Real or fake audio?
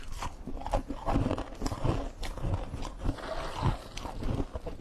real